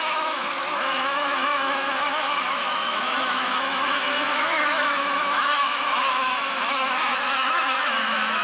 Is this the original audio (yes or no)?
no